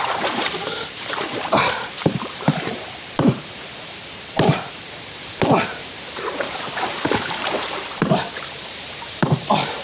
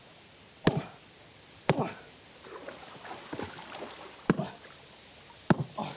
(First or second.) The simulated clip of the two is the first